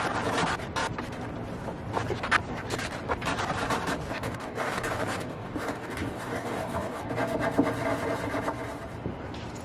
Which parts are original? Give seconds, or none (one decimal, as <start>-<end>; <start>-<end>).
0.0-4.0; 7.1-9.6